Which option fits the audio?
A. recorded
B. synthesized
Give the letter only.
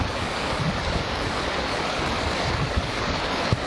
B